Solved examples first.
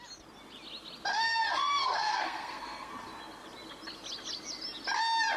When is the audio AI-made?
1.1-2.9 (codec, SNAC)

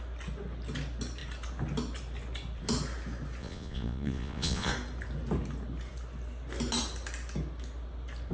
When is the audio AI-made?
3.4-4.7 (vocoder, Vocos)